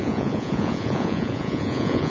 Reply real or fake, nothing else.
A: fake